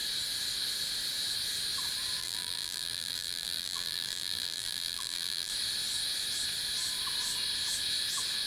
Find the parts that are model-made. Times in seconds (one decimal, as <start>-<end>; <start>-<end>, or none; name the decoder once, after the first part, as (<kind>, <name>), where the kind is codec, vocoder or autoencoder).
2.2-5.5 (vocoder, BigVGAN v2)